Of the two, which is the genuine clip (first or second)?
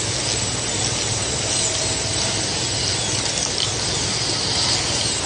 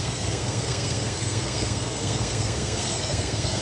first